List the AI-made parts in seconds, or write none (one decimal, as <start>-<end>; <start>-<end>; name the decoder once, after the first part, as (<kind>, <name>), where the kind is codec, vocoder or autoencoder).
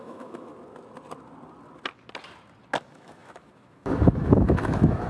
0.0-0.5 (autoencoder, DAC-VAE); 2.8-5.1